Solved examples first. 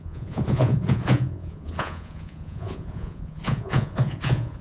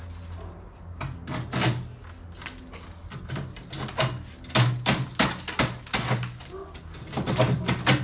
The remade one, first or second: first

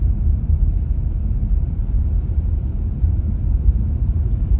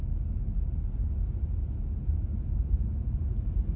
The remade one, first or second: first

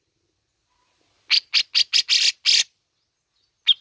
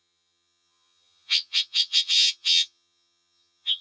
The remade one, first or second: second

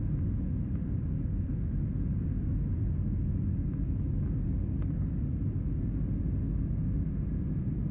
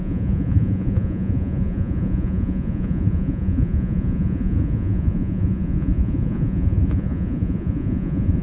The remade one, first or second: second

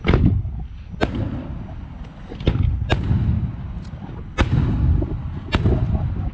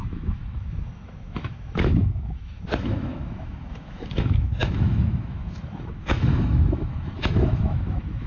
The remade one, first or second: second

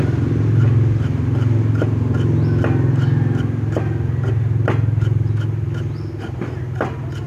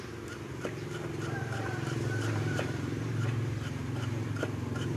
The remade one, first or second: second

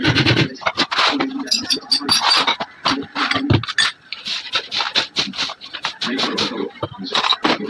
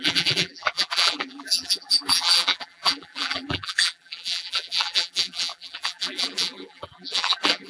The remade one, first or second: second